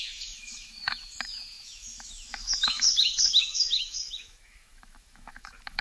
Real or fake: fake